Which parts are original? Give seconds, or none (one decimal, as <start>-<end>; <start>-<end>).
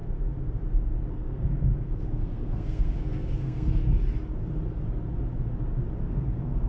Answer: 0.0-1.1; 3.8-6.0